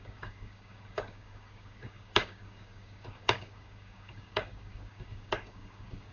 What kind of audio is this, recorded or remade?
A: remade